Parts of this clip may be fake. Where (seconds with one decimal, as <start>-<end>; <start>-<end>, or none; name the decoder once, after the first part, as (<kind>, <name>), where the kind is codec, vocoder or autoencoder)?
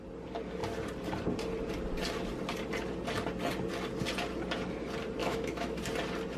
5.2-5.8 (autoencoder, DAC-VAE)